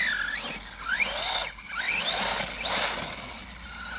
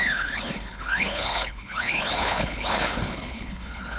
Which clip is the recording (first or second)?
first